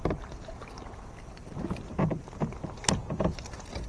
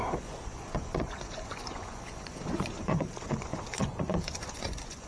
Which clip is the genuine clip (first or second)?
first